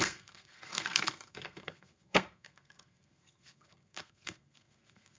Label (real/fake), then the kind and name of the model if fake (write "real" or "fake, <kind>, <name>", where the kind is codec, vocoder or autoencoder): fake, codec, SNAC